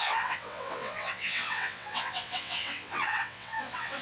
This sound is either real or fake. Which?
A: fake